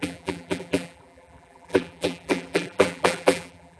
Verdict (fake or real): fake